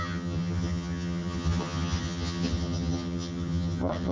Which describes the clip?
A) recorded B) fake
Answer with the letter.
B